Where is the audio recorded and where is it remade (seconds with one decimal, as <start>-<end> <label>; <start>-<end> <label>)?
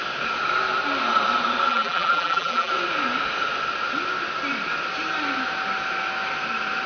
0.0-1.7 recorded; 1.7-2.7 remade; 2.7-6.9 recorded